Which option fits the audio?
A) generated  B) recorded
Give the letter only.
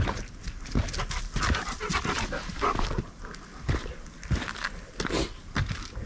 B